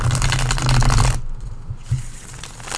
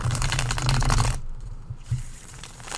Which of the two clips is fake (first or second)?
second